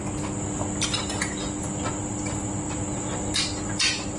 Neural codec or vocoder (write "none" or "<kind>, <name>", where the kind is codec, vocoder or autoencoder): none